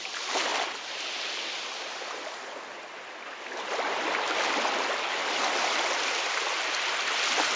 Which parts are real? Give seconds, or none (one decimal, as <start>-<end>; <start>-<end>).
0.0-7.6